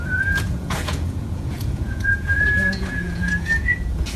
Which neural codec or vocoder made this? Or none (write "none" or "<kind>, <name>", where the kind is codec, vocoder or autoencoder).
vocoder, Vocos